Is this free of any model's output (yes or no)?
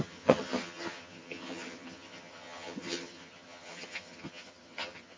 no